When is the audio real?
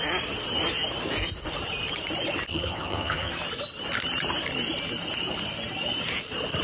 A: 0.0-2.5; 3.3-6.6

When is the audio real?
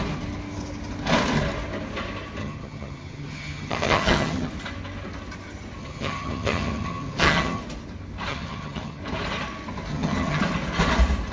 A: 0.0-2.4; 4.5-5.8; 7.6-8.3; 9.0-9.9; 10.4-11.3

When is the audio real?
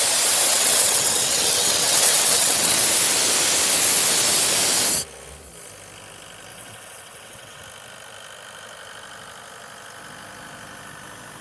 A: 0.0-0.5; 2.8-6.5; 7.6-11.4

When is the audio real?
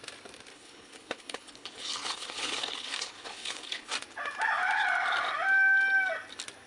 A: 0.0-0.5; 3.9-6.7